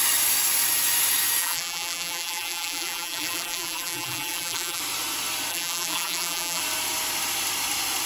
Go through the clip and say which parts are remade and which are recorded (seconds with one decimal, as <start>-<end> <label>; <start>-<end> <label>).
0.0-1.4 recorded; 1.4-4.8 remade; 4.8-5.5 recorded; 5.5-6.6 remade; 6.6-8.1 recorded